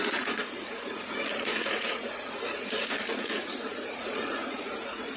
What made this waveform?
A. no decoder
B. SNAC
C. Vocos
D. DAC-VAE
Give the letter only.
C